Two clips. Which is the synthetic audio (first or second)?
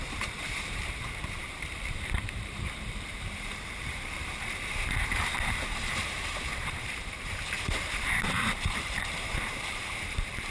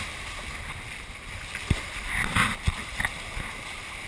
first